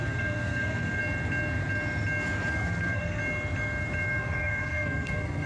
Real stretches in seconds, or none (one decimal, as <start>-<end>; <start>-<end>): 1.0-2.5; 3.2-4.2

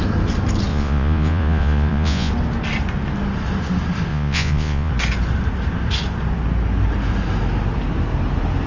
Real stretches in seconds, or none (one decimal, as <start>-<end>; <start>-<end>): 0.0-0.7; 2.3-4.1; 4.9-8.7

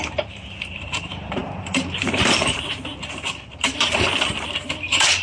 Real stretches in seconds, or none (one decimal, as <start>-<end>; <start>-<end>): none

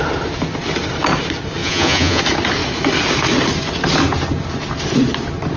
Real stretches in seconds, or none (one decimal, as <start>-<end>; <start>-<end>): 0.0-1.6; 2.2-5.6

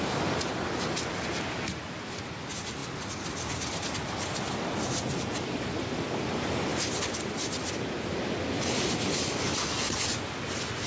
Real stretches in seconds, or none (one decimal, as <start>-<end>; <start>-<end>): 0.0-10.9

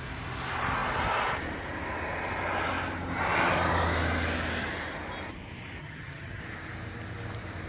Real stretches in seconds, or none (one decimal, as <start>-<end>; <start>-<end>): 0.0-5.8; 6.4-7.7

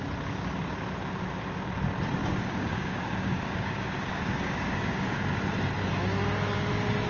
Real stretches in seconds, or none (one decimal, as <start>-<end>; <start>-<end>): 0.0-2.2; 5.4-7.1

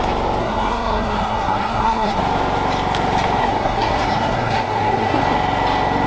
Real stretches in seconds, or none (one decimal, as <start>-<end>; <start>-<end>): 0.0-0.4; 2.2-3.4; 5.2-6.1